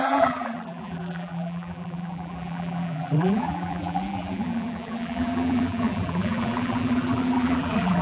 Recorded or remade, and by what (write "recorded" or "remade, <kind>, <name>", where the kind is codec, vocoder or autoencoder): remade, vocoder, BigVGAN v2